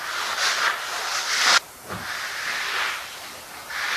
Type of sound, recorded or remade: recorded